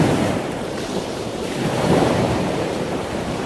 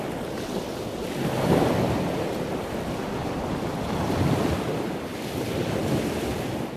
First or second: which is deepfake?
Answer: first